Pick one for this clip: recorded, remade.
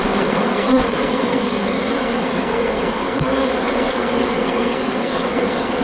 remade